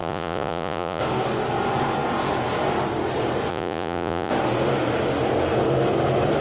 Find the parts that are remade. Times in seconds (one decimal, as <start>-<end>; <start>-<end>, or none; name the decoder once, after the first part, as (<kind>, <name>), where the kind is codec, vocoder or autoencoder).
0.0-1.0 (vocoder, Vocos); 3.5-4.3